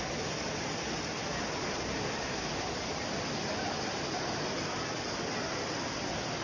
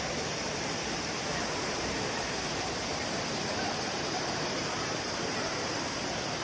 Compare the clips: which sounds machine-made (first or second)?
second